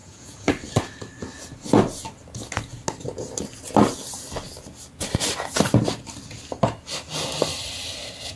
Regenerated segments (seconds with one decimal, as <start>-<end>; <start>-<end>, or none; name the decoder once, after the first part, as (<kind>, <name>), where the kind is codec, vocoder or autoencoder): 0.0-0.5 (vocoder, Vocos)